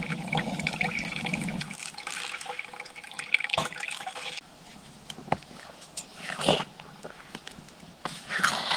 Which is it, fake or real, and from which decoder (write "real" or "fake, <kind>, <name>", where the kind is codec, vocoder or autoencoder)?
fake, autoencoder, DAC-VAE